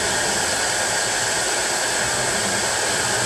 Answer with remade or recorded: recorded